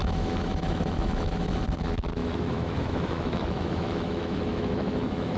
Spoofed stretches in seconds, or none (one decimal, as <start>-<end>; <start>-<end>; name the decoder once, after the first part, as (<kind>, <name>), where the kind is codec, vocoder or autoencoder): 0.0-1.4 (autoencoder, DAC-VAE); 2.2-5.4